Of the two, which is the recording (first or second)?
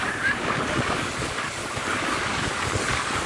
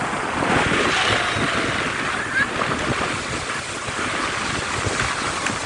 second